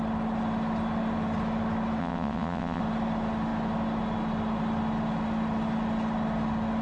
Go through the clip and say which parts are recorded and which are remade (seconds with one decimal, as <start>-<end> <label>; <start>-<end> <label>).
0.0-2.0 recorded; 2.0-2.8 remade; 2.8-6.8 recorded